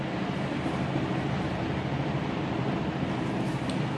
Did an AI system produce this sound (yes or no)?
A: no